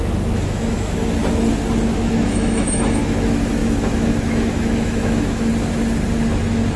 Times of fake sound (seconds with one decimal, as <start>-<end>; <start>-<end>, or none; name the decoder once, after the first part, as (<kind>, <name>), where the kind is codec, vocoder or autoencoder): 0.0-1.2 (autoencoder, DAC-VAE); 1.9-5.5